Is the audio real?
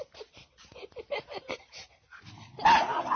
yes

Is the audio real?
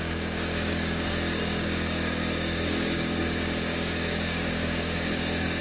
no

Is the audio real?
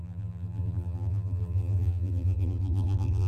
no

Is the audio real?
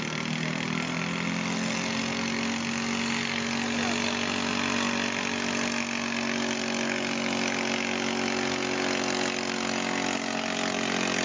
yes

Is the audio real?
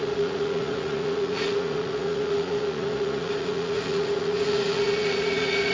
no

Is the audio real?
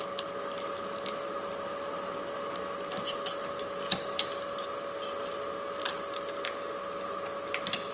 yes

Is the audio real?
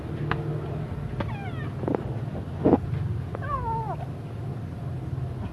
yes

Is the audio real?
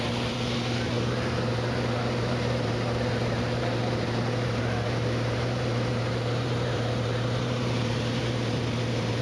no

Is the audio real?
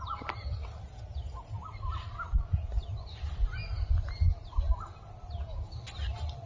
yes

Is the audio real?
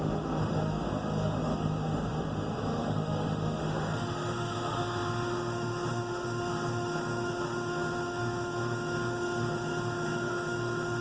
no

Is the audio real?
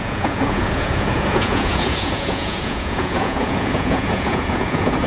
no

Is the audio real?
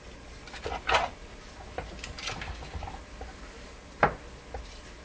yes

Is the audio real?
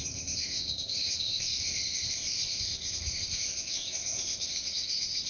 no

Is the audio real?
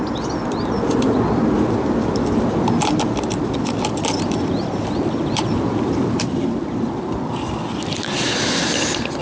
yes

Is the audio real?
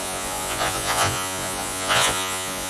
no